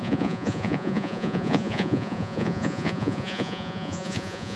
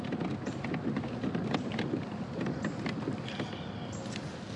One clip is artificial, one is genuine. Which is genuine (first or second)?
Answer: second